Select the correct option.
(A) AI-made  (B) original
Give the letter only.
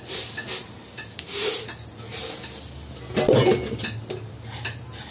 B